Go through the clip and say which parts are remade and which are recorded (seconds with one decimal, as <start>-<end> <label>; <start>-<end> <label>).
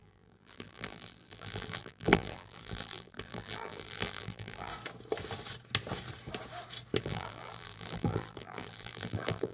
0.0-4.7 remade; 4.7-7.0 recorded; 7.0-9.5 remade